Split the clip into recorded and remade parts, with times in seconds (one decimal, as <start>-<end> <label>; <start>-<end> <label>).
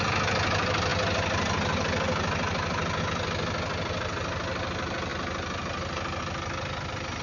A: 0.0-7.2 recorded